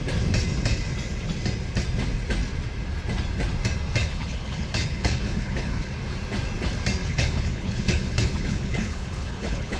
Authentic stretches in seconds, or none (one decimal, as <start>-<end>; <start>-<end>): 0.0-4.0; 5.9-7.0